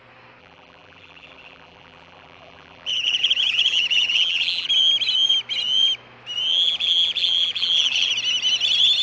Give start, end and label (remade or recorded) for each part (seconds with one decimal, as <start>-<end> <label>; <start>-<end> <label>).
0.0-0.4 recorded; 0.4-4.7 remade; 4.7-6.5 recorded; 6.5-8.1 remade; 8.1-9.0 recorded